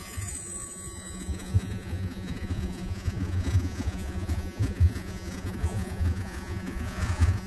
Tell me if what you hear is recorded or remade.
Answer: remade